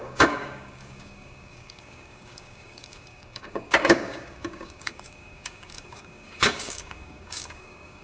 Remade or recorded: remade